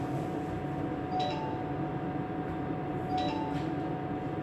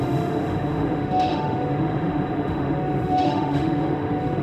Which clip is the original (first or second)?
first